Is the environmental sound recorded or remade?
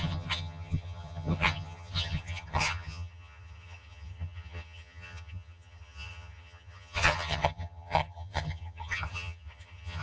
remade